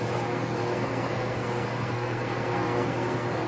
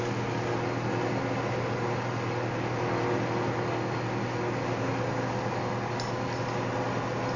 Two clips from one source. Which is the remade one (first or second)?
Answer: first